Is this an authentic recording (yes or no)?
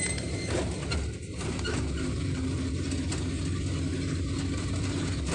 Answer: yes